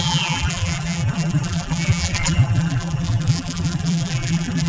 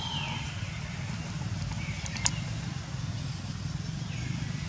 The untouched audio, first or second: second